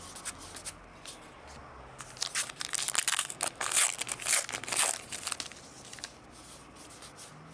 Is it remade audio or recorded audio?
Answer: recorded